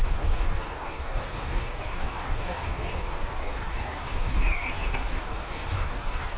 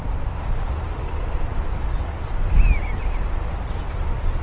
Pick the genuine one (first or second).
second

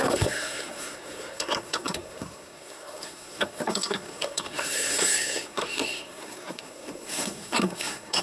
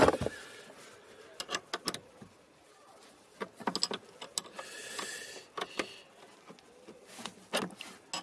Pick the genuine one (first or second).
second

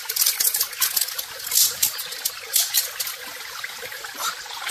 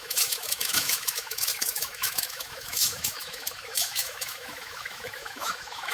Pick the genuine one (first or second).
first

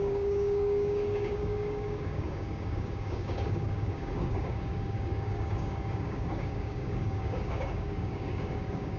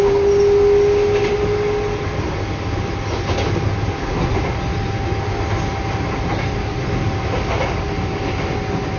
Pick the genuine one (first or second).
second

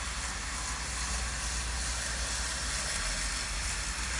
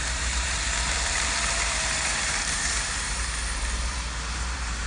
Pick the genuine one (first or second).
first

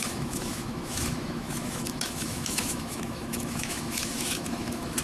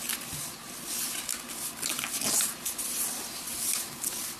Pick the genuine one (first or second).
second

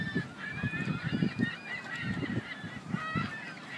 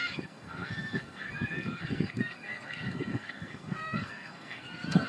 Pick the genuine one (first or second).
first